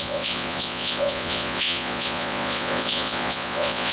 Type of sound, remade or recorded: remade